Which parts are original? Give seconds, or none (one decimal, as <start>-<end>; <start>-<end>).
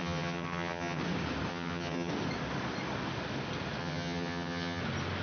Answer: 1.0-1.5; 2.1-3.8; 4.8-5.2